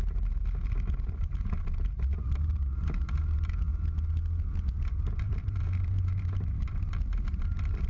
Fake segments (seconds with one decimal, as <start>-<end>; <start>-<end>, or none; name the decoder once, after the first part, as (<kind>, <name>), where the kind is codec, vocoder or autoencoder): 0.0-3.7 (vocoder, BigVGAN v2); 4.7-7.9